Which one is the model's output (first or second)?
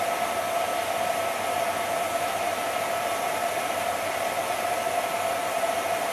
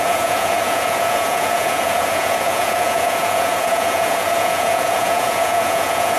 second